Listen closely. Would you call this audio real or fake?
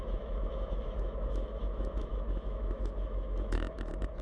fake